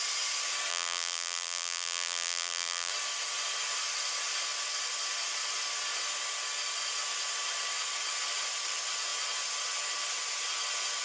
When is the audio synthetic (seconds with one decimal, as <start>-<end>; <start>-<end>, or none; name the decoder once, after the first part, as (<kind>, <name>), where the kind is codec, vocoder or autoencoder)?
0.7-2.9 (vocoder, BigVGAN v2)